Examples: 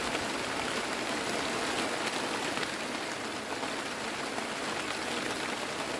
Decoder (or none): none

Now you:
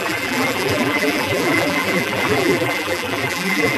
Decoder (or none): vocoder, BigVGAN v2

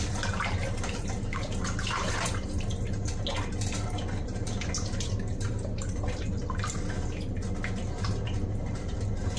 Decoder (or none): none